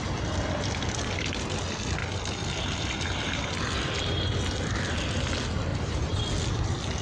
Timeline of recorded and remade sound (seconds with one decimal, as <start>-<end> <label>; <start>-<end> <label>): 0.0-5.7 recorded; 5.7-6.2 remade; 6.2-7.0 recorded